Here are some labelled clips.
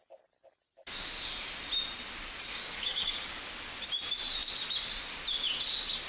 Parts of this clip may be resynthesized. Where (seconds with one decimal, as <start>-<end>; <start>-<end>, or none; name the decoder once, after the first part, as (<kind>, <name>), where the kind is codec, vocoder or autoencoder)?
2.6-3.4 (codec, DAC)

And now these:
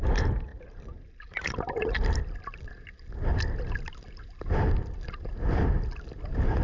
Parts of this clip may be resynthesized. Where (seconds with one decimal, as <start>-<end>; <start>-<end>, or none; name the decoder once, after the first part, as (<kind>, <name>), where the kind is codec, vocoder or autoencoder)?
none

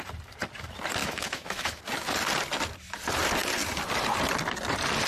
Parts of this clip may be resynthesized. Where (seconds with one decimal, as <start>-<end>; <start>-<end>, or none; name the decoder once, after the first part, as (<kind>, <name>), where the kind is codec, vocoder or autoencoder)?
1.0-1.8 (autoencoder, DAC-VAE)

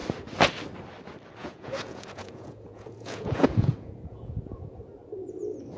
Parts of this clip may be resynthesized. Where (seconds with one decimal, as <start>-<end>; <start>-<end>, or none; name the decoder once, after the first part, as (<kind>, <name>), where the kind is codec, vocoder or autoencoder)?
1.4-4.9 (vocoder, Vocos)